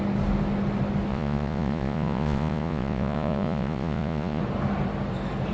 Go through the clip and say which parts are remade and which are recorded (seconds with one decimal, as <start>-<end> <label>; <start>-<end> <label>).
0.0-1.1 recorded; 1.1-4.4 remade; 4.4-5.5 recorded